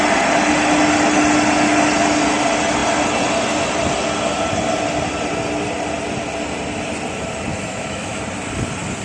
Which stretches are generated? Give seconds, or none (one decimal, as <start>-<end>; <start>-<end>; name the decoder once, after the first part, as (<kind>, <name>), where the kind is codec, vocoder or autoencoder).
7.5-8.2 (autoencoder, DAC-VAE)